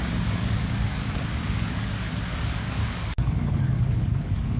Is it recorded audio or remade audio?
remade